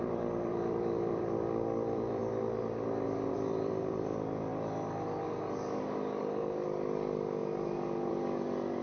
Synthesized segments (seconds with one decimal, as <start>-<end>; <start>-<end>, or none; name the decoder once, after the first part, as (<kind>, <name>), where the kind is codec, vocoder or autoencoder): 0.0-2.2 (vocoder, BigVGAN v2); 3.3-4.5; 6.2-7.4; 8.1-8.8